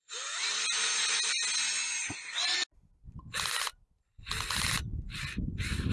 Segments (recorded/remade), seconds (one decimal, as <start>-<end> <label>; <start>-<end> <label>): 0.0-5.9 recorded